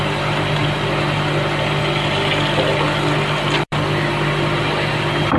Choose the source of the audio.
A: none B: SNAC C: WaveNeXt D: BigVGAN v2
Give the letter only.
D